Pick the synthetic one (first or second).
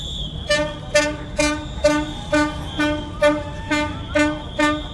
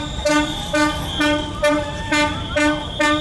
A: second